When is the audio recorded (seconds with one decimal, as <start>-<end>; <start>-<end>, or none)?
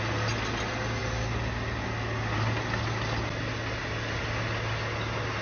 0.0-5.4